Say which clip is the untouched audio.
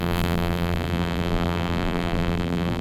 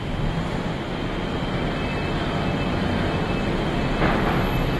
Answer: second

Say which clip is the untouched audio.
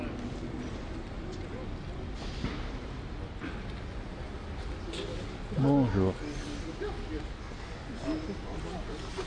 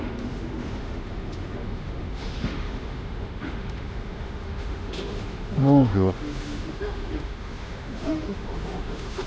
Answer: first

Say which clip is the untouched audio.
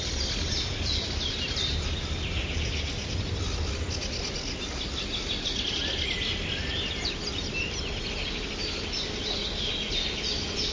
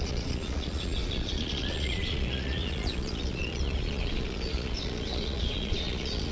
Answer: first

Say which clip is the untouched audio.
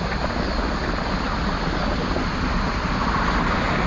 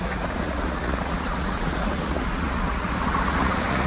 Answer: first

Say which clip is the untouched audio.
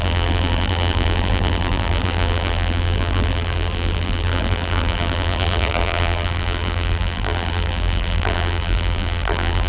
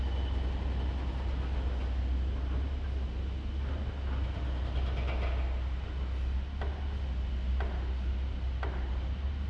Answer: second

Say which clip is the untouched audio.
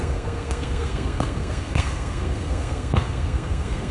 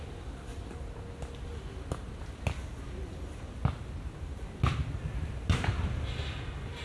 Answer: second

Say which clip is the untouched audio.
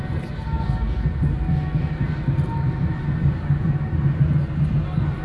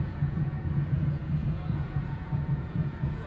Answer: first